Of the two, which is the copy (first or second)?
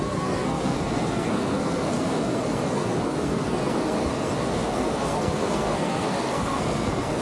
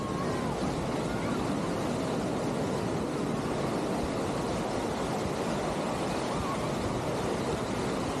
first